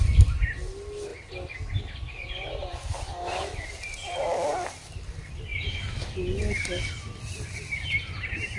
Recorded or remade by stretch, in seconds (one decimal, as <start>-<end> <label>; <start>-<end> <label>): 0.0-8.6 recorded